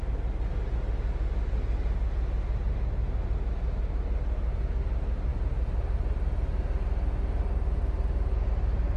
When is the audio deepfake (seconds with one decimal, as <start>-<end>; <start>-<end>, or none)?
none